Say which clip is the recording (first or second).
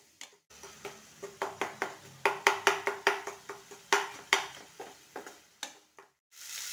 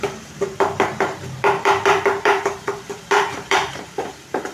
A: first